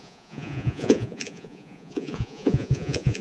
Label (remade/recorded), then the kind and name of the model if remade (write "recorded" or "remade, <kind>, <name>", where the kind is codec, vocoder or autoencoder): remade, vocoder, Vocos